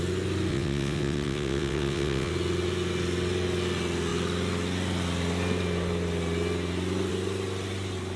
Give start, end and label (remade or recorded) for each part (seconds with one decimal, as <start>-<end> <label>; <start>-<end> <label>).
0.0-0.5 recorded; 0.5-2.3 remade; 2.3-8.2 recorded